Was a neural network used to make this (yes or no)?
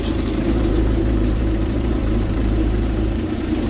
yes